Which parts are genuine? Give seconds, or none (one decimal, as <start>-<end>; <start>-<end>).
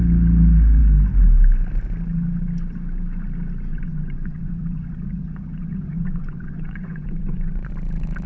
0.0-3.7; 7.7-8.3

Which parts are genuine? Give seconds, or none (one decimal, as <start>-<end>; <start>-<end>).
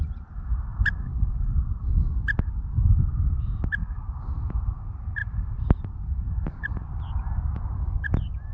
0.0-0.7; 1.9-5.2; 7.0-8.5